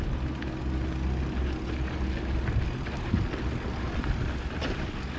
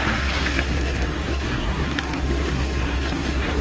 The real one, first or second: first